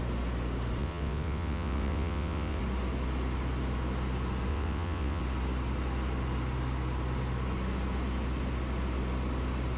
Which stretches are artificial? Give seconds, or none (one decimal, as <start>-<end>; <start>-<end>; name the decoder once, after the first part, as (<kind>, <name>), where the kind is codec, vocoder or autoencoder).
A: 0.8-2.6 (vocoder, WaveNeXt); 4.5-5.2